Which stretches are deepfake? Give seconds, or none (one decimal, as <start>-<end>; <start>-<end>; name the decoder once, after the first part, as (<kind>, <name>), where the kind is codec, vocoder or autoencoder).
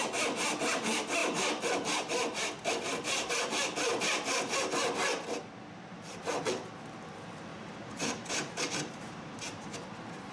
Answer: 7.5-9.7 (vocoder, BigVGAN v2)